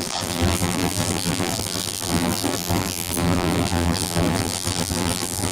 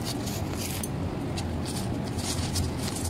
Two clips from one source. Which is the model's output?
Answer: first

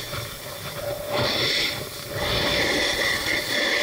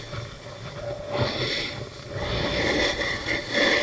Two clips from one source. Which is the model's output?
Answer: first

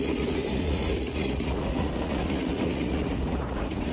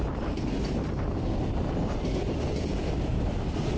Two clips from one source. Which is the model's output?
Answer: first